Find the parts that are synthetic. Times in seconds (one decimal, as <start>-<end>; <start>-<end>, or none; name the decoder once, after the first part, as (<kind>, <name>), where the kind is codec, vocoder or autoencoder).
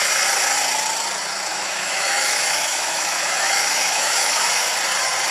1.5-4.7 (autoencoder, DAC-VAE)